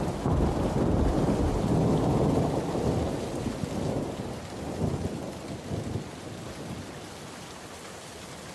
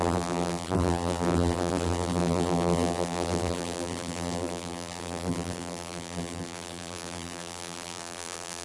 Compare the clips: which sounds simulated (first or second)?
second